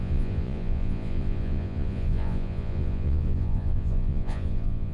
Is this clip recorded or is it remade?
remade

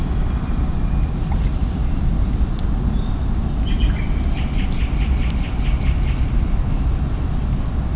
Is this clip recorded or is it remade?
recorded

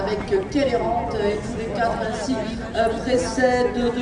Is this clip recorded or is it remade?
recorded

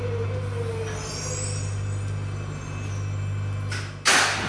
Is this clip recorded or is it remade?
recorded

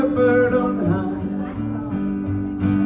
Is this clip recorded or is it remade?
recorded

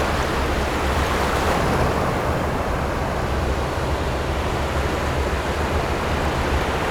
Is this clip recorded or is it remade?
recorded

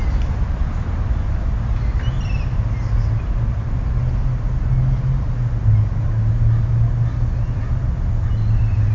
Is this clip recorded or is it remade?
recorded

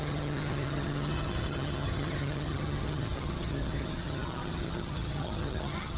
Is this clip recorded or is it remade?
remade